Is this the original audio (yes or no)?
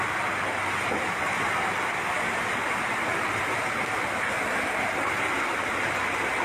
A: yes